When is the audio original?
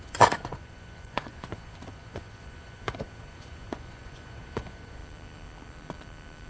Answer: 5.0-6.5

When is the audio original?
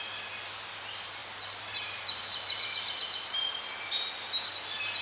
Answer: 0.0-1.2; 3.4-5.0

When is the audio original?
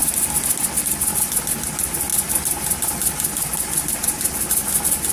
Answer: 0.0-5.1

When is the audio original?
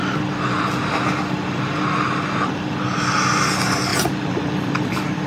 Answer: 0.0-3.9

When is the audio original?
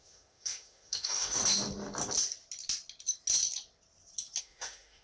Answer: 1.4-4.4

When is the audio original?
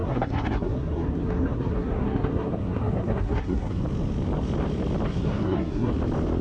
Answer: 3.8-5.1; 5.9-6.4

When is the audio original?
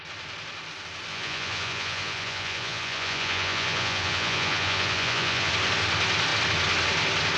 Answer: 0.0-1.1; 5.5-7.4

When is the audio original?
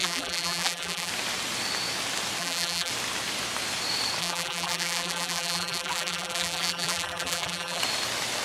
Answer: 1.1-2.4; 2.9-4.2; 7.8-8.4